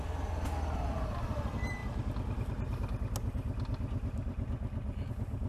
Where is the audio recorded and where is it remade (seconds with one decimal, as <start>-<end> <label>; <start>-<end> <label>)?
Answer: 0.0-5.5 recorded